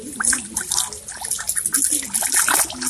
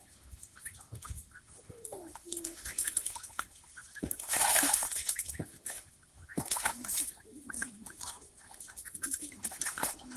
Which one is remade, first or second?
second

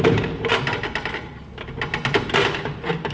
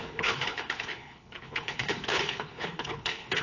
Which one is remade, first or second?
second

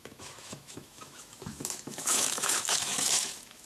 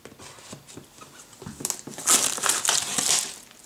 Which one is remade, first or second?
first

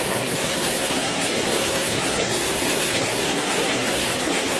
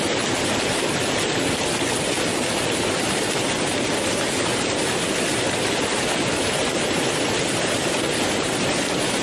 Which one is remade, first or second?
first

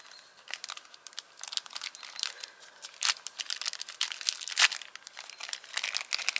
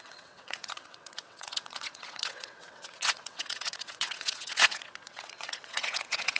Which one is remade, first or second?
second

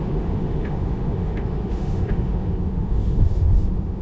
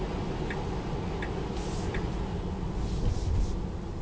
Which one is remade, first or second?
first